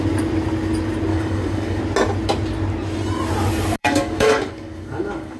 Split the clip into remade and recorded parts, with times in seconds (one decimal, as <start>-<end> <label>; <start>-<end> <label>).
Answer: 0.0-1.1 recorded; 1.1-1.8 remade; 1.8-3.8 recorded; 3.8-5.4 remade